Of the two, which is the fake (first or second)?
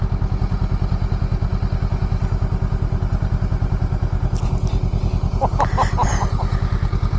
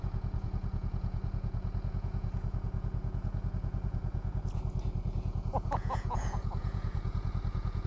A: second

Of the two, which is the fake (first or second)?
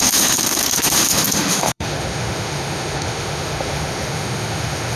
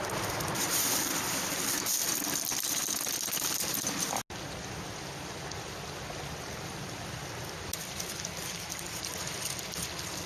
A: first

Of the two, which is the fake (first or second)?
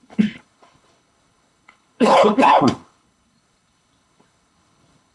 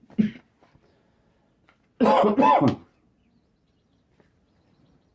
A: first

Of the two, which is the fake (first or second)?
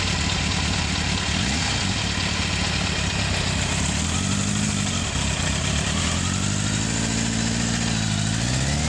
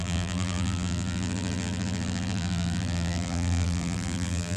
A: second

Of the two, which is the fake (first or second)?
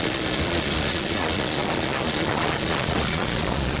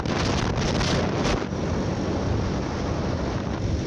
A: first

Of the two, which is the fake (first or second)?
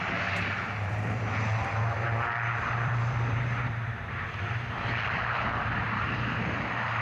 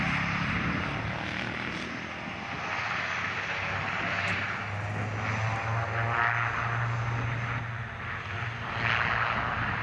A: first